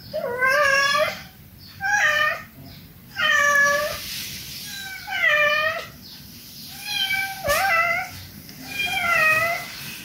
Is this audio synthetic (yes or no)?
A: no